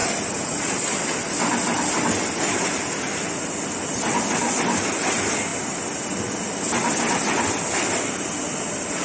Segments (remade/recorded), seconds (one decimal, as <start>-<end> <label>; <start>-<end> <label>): 0.0-9.0 recorded